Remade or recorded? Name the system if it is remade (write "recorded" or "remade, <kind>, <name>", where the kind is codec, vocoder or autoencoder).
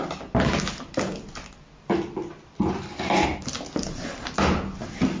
recorded